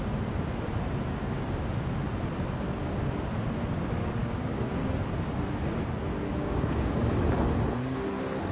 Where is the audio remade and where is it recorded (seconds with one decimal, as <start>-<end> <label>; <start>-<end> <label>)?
0.0-4.2 recorded; 4.2-4.8 remade; 4.8-6.3 recorded; 6.3-7.1 remade; 7.1-8.5 recorded